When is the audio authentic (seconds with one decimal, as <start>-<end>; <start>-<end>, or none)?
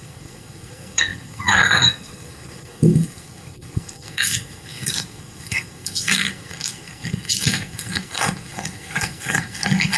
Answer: none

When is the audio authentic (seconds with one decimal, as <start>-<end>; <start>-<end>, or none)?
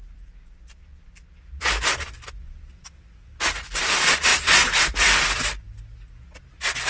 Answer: 0.0-2.4; 3.0-6.9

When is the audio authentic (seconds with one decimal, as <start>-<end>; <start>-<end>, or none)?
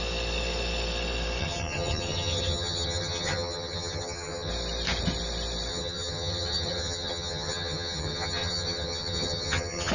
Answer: 0.0-1.4; 4.5-5.7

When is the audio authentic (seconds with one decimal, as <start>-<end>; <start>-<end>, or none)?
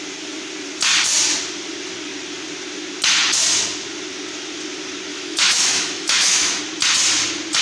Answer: 0.0-5.1; 6.6-7.6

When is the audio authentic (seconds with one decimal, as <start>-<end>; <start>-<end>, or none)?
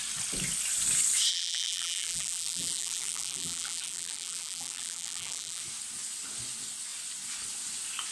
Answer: 0.0-1.3; 5.6-8.1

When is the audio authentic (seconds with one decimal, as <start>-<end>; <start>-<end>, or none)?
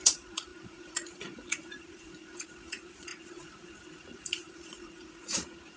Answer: none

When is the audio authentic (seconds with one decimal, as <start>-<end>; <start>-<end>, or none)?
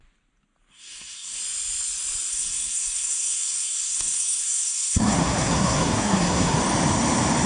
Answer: 0.0-0.7; 1.4-2.3; 6.6-7.5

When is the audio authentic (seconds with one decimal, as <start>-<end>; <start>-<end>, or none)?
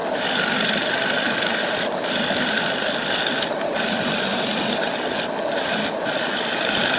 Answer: 0.0-7.0